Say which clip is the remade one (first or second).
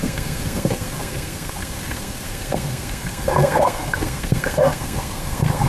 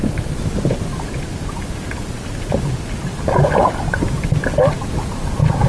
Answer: first